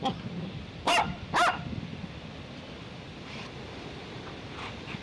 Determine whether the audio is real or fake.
fake